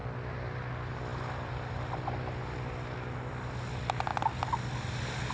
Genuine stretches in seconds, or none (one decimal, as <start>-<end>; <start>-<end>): 0.0-0.7; 1.1-3.3